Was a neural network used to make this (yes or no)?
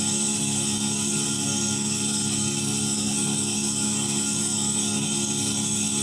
yes